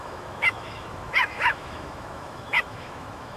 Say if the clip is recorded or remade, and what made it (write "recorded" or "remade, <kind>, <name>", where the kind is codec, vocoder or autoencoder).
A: remade, autoencoder, DAC-VAE